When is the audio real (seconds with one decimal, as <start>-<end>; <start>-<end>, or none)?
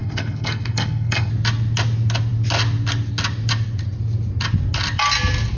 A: 1.3-5.6